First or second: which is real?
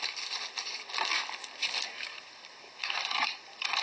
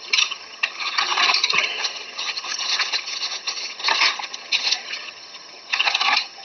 first